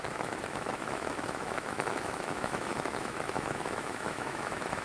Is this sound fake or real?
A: fake